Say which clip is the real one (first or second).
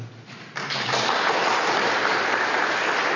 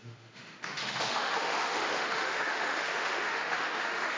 first